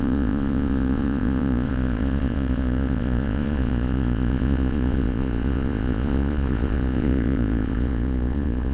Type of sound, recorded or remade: remade